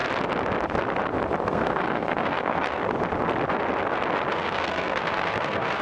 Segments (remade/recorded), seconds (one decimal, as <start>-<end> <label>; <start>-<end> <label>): 0.0-1.5 recorded; 1.5-2.8 remade; 2.8-4.3 recorded; 4.3-5.8 remade